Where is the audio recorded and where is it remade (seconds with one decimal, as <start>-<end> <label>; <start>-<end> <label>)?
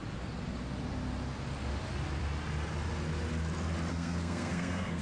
0.0-3.9 recorded; 3.9-5.0 remade